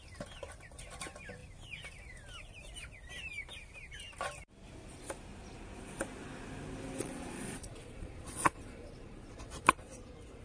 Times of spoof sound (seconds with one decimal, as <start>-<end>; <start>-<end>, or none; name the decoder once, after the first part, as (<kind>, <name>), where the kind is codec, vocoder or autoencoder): 7.0-10.0 (vocoder, Vocos)